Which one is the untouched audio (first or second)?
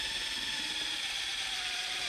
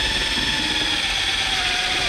second